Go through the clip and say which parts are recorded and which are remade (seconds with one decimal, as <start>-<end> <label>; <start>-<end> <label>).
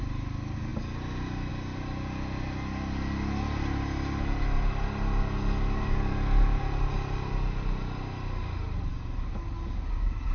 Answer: 0.0-10.3 recorded